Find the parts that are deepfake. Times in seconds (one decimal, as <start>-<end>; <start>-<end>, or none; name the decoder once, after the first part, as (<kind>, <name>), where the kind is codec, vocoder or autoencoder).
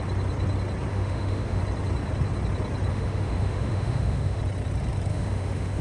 0.9-1.6 (autoencoder, DAC-VAE); 2.9-4.4; 5.1-5.8